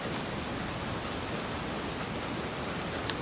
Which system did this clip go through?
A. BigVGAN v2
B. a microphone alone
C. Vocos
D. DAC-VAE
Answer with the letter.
B